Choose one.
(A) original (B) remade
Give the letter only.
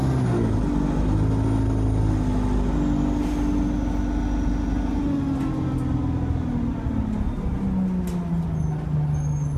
A